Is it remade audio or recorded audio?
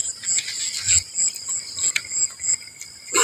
recorded